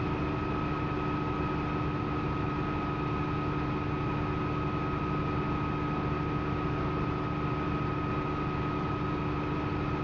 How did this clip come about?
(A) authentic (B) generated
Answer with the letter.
A